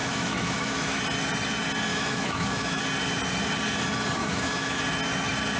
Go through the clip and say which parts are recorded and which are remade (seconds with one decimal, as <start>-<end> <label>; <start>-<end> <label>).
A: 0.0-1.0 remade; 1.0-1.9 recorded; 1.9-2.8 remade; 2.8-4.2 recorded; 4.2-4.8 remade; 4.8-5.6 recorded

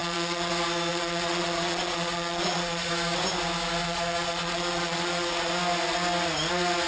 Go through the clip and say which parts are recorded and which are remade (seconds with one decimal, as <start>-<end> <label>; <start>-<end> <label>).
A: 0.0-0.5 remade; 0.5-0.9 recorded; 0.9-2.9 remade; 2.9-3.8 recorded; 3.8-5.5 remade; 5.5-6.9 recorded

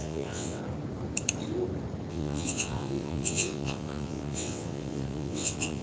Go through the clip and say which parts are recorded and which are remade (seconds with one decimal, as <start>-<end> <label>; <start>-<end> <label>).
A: 0.0-0.6 remade; 0.6-2.1 recorded; 2.1-5.8 remade